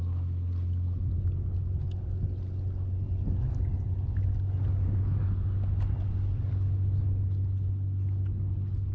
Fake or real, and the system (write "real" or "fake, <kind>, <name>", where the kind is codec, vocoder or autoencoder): real